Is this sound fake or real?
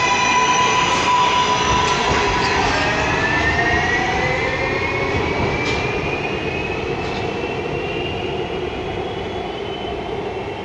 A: real